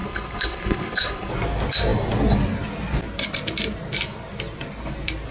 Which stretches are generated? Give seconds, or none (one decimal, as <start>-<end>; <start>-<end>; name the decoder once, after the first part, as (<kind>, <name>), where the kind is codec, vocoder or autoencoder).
0.0-1.3 (codec, HILCodec)